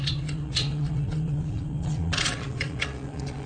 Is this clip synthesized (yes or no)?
yes